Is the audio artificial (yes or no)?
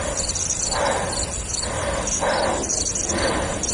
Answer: no